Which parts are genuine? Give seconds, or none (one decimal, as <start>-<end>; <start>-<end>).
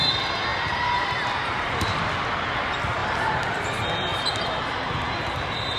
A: 0.0-0.5; 2.0-3.0; 3.6-4.1